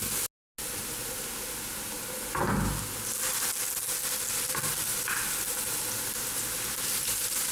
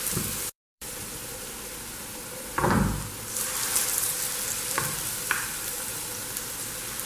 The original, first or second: first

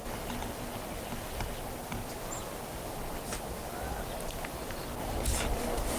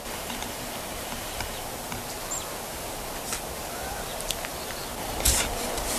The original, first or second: first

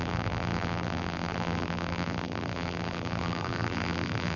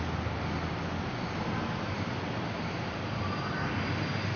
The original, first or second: second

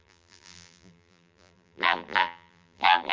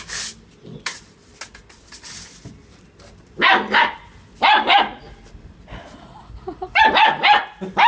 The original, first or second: second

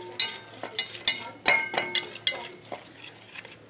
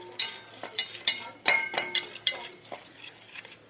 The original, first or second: first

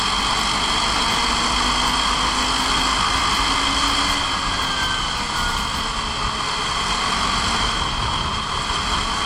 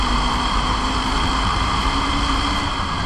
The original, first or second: first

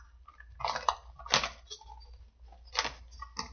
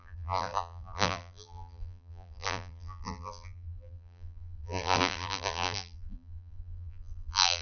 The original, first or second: first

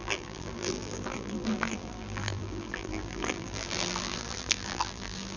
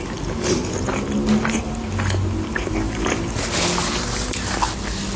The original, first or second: second